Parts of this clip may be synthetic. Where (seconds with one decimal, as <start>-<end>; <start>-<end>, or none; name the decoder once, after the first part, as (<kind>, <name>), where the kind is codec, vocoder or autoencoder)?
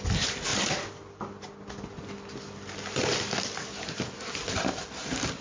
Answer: 0.5-3.4 (vocoder, BigVGAN v2)